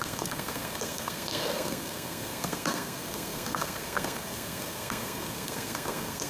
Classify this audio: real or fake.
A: fake